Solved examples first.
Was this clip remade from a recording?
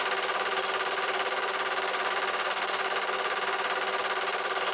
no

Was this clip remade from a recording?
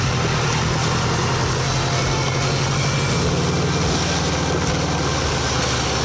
no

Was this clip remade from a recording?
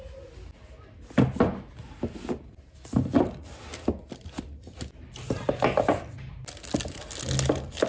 no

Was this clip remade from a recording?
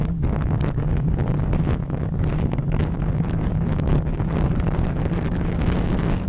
yes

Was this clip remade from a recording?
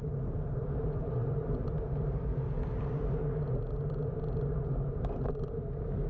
no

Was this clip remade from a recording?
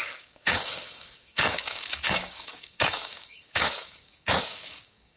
yes